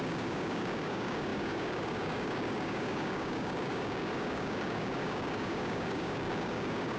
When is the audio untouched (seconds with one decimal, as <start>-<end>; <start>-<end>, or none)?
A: none